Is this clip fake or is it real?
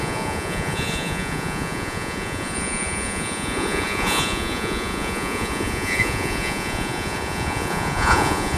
fake